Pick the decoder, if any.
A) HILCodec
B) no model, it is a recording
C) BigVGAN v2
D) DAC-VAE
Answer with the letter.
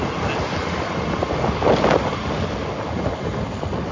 B